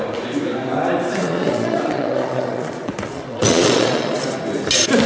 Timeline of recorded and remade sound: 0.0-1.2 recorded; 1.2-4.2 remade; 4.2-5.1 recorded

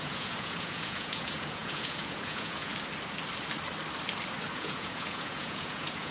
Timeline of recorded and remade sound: 0.0-2.7 remade; 2.7-4.5 recorded; 4.5-6.1 remade

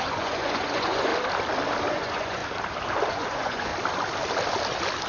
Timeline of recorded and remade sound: 0.0-1.1 remade; 1.1-1.9 recorded; 1.9-2.4 remade; 2.4-3.1 recorded; 3.1-3.7 remade; 3.7-5.1 recorded

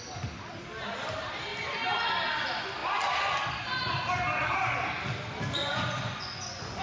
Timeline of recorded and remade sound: 0.0-5.6 recorded; 5.6-6.8 remade

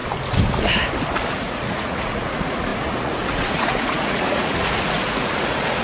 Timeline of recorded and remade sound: 0.0-1.3 recorded; 1.3-5.8 remade

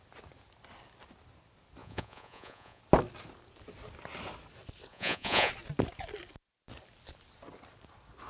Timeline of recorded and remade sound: 0.0-1.8 recorded; 1.8-2.8 remade; 2.8-4.9 recorded; 4.9-5.5 remade; 5.5-8.3 recorded